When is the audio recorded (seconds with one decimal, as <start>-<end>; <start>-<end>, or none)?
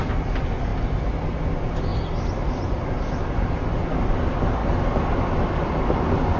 0.0-6.4